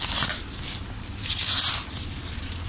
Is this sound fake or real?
real